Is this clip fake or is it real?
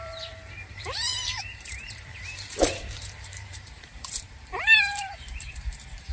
fake